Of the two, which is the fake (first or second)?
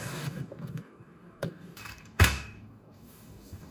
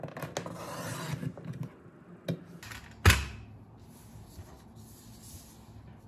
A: first